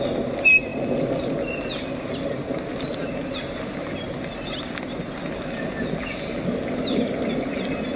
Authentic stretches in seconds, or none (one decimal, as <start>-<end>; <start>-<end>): 0.0-8.0